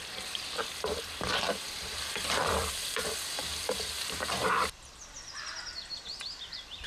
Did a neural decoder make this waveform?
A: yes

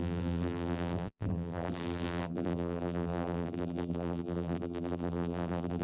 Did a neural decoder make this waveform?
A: yes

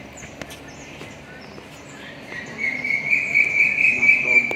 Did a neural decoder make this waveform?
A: yes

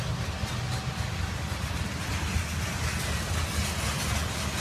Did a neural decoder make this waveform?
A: no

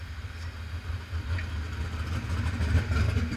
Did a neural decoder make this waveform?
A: no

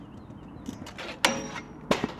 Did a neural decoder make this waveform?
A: no